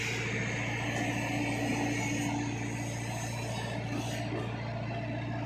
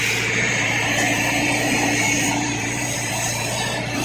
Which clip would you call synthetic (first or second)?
second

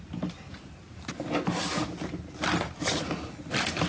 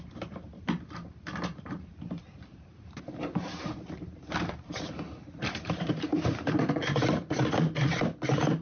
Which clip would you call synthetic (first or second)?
second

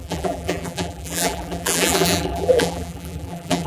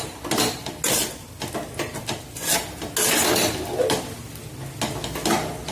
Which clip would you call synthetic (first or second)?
first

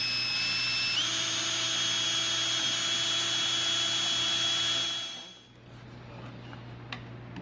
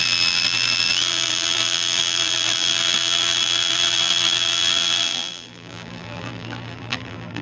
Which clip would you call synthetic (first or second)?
second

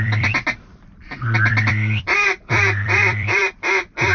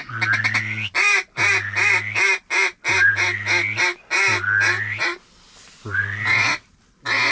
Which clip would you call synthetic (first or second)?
first